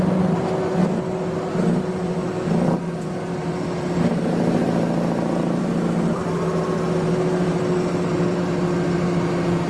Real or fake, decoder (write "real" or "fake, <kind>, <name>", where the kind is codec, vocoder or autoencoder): real